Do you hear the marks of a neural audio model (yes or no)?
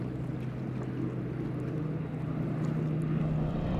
no